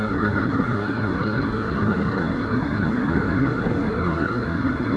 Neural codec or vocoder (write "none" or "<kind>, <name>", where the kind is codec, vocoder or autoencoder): codec, SNAC